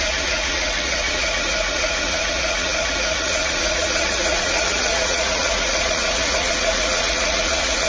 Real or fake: fake